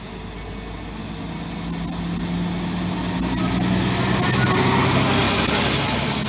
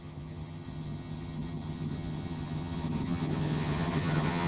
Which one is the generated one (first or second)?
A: second